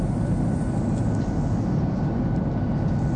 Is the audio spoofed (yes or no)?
no